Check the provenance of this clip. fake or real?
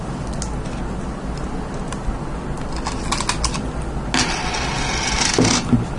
real